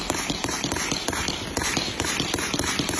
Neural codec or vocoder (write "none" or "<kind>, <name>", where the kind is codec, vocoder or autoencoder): none